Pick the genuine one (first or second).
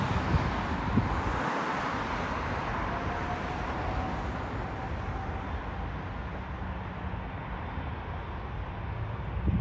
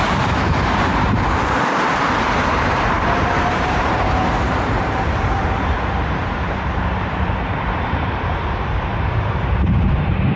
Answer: first